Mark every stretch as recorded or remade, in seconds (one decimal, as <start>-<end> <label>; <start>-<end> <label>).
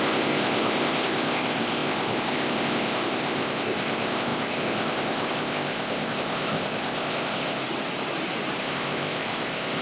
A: 0.0-7.6 remade; 7.6-8.6 recorded; 8.6-9.8 remade